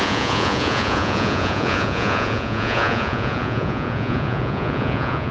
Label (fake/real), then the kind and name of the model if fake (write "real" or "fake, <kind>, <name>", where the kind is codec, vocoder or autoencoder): fake, vocoder, Vocos